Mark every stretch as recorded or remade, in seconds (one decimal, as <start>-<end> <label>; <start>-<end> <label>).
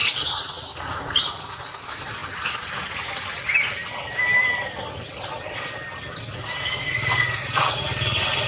0.0-1.8 remade; 1.8-6.3 recorded; 6.3-7.4 remade; 7.4-8.5 recorded